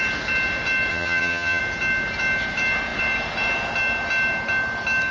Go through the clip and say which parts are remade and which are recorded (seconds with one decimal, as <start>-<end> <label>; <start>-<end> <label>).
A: 0.0-0.9 recorded; 0.9-1.6 remade; 1.6-5.1 recorded